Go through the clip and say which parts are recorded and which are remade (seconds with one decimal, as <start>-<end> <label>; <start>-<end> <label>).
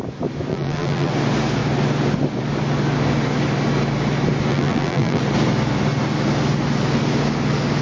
0.0-0.5 recorded; 0.5-1.1 remade; 1.1-4.5 recorded; 4.5-5.2 remade; 5.2-7.8 recorded